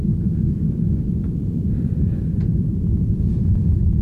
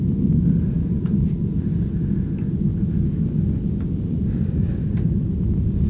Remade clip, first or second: first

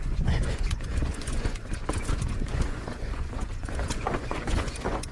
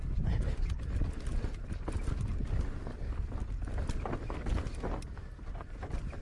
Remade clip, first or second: first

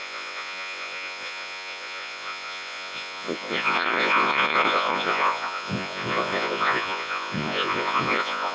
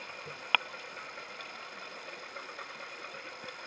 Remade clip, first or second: first